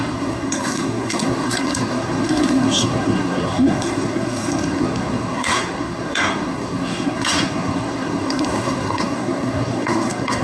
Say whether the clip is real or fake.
fake